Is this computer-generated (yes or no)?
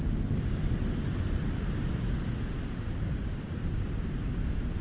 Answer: no